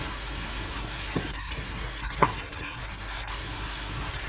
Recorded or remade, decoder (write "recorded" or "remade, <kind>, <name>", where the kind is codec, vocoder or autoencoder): remade, codec, SNAC